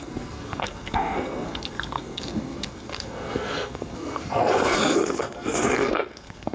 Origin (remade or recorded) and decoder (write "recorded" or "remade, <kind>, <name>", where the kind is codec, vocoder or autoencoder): remade, codec, SNAC